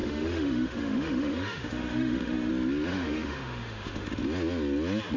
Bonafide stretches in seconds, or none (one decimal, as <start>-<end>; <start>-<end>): 2.5-2.9; 4.1-5.2